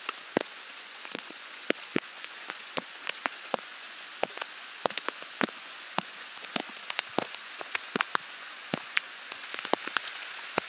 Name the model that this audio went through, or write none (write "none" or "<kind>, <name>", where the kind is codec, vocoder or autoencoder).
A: vocoder, Vocos